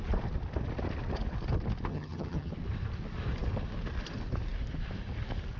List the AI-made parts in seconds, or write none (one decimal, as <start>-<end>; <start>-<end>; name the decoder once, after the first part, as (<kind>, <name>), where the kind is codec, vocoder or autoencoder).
1.9-2.5 (vocoder, HiFi-GAN)